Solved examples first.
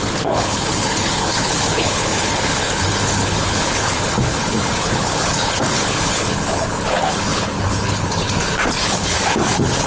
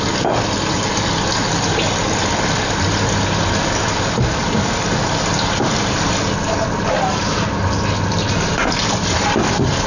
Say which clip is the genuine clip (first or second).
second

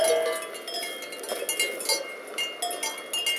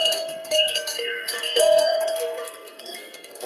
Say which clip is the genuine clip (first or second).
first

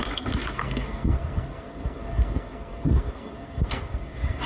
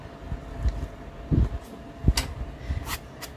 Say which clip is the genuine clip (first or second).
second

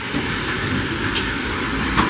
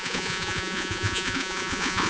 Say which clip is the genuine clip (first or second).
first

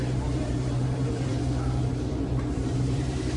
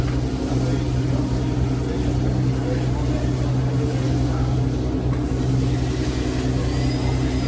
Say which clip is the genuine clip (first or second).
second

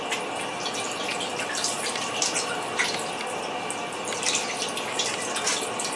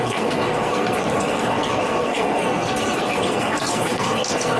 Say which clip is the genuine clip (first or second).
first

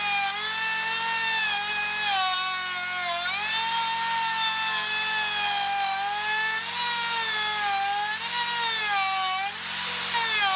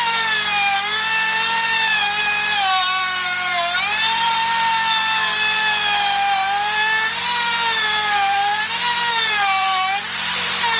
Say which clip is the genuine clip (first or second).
first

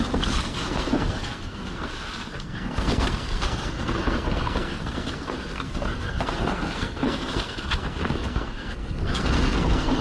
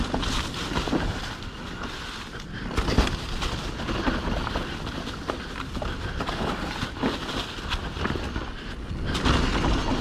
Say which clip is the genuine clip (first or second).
second